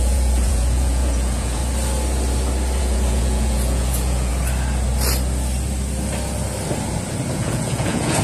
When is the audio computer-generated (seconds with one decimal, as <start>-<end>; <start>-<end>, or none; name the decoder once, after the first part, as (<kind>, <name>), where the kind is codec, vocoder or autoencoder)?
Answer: 0.0-1.6 (vocoder, Vocos); 2.8-4.3; 7.3-8.2